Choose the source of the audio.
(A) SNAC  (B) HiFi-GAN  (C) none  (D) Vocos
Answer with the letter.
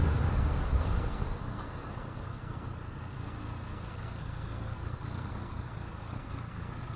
A